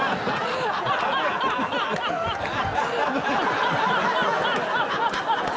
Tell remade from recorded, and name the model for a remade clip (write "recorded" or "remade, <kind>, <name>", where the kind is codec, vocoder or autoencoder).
recorded